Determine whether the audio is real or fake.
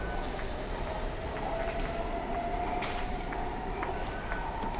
real